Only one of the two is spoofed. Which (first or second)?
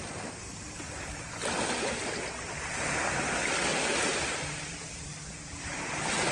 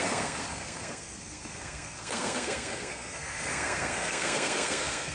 second